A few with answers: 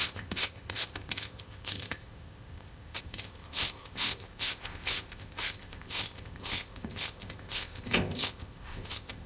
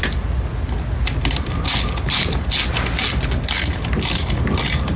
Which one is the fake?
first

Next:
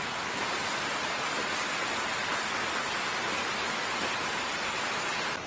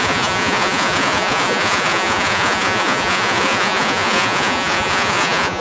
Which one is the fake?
second